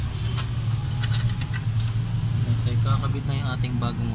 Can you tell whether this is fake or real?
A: real